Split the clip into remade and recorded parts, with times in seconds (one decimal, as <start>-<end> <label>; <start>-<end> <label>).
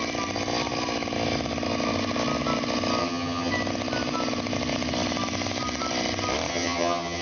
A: 0.0-3.0 recorded; 3.0-3.5 remade; 3.5-6.5 recorded; 6.5-7.2 remade